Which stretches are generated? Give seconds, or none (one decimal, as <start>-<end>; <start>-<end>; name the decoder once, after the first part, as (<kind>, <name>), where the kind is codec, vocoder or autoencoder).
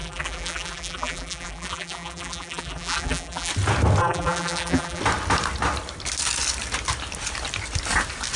0.0-3.5 (vocoder, BigVGAN v2); 4.0-5.0